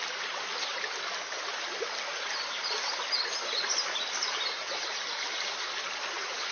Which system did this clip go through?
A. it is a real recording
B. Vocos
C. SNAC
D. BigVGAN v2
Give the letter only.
A